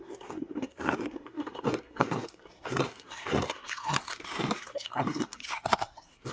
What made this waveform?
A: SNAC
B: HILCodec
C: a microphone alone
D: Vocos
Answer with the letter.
A